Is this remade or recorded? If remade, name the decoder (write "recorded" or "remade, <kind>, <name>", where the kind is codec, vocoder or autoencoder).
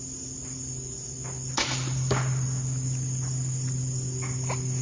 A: recorded